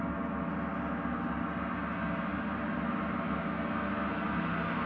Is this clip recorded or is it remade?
recorded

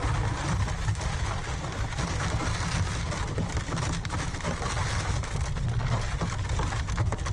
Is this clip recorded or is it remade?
recorded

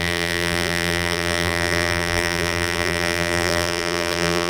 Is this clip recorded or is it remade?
remade